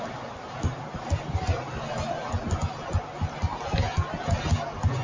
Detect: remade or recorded recorded